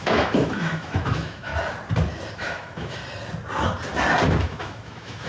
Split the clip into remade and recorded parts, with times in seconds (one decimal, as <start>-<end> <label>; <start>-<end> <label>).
0.0-1.5 remade; 1.5-2.3 recorded; 2.3-3.0 remade; 3.0-4.4 recorded; 4.4-5.3 remade